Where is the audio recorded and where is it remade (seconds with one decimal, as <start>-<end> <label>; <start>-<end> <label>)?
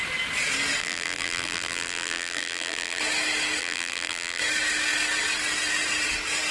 0.0-0.8 recorded; 0.8-3.0 remade; 3.0-3.6 recorded; 3.6-4.4 remade; 4.4-6.5 recorded